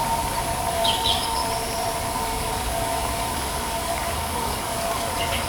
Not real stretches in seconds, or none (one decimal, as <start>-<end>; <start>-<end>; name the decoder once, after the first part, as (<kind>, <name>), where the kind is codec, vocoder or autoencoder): 0.7-1.4 (codec, DAC); 2.3-5.5